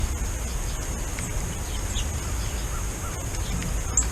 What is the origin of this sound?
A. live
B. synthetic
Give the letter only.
A